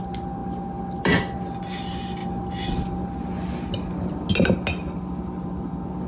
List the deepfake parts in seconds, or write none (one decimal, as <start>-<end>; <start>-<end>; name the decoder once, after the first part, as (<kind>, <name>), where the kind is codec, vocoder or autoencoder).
none